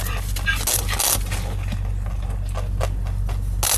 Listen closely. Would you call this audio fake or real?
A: real